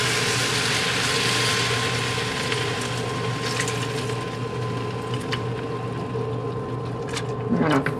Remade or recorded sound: recorded